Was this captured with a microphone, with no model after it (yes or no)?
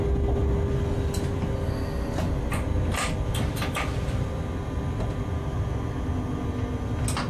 yes